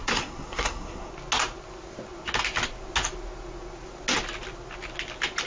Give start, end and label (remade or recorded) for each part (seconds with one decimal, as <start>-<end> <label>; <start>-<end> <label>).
0.0-1.1 remade; 1.1-5.5 recorded